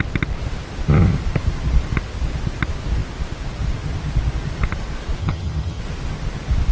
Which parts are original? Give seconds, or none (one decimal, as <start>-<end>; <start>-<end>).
0.0-5.2; 5.8-6.7